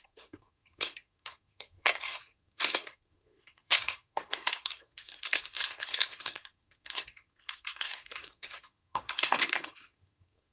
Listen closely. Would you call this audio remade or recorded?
remade